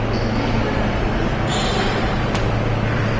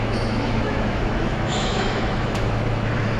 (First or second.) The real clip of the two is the first